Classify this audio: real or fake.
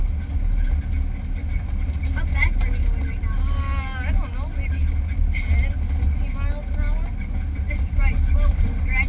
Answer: real